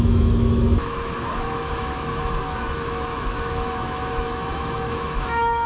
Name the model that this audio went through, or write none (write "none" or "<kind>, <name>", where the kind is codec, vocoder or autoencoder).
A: autoencoder, DAC-VAE